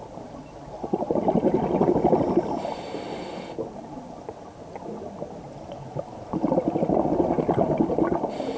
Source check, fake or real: real